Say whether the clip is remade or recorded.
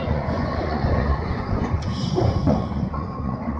remade